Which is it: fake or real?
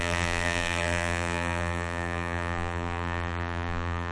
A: fake